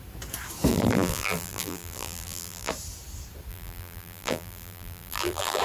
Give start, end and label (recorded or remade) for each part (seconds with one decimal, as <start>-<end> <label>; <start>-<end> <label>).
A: 0.0-0.7 recorded; 0.7-2.7 remade; 2.7-3.5 recorded; 3.5-5.6 remade